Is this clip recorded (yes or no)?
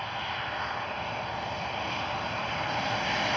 yes